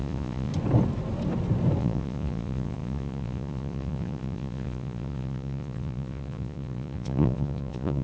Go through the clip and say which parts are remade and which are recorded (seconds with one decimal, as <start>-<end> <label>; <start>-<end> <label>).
0.0-0.5 remade; 0.5-1.8 recorded; 1.8-8.0 remade